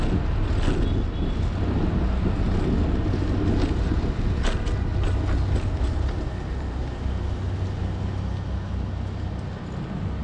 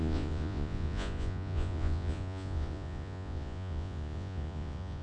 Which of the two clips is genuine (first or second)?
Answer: first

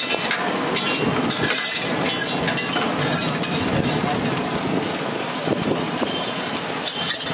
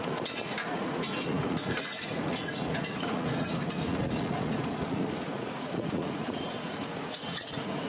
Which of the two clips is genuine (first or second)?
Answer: first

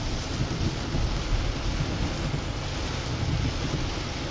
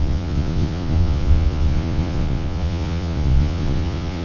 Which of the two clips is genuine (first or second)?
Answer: first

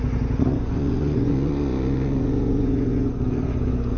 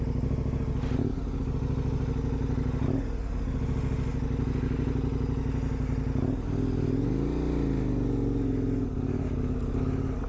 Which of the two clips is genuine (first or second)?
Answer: second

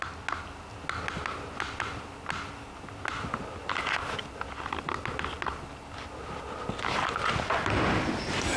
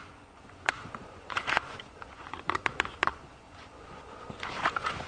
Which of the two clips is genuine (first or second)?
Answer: first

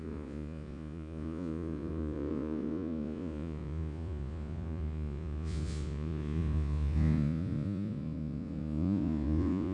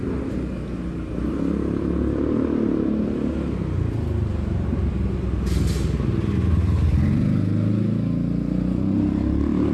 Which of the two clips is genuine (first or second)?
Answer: second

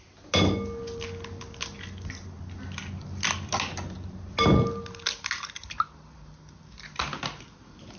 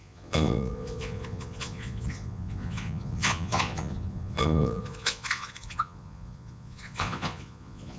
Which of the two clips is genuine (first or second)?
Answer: first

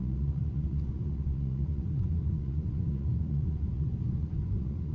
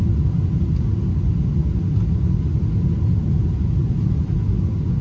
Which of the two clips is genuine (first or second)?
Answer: second